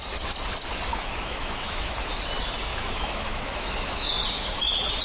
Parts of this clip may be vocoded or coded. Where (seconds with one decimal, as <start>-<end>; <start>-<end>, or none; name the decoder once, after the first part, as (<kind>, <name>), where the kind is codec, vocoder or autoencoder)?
0.9-2.1 (autoencoder, DAC-VAE); 2.7-4.1